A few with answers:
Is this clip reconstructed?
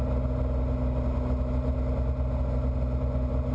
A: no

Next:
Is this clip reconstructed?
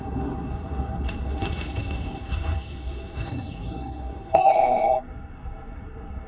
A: yes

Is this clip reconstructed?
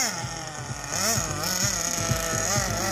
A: no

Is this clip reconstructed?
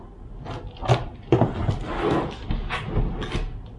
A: no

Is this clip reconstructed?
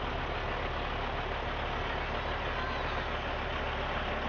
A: no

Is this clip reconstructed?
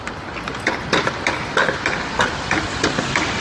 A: no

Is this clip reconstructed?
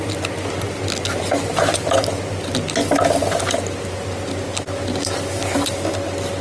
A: no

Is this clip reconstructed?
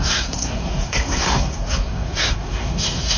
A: yes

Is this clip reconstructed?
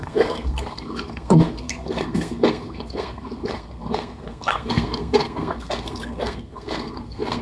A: yes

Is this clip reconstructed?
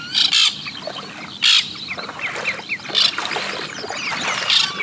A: no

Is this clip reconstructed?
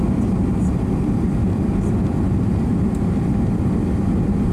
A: no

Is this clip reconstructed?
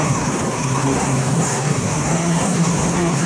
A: yes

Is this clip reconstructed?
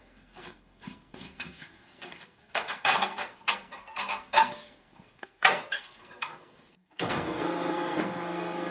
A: yes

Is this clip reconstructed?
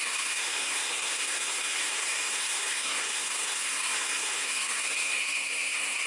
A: yes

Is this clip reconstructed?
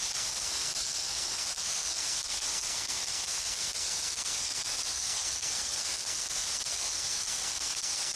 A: yes